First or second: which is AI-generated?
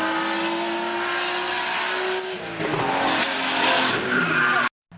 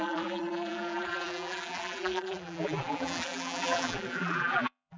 second